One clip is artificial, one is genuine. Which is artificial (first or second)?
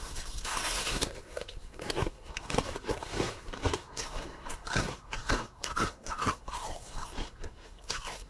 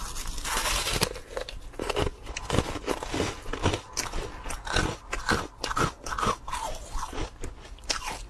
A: first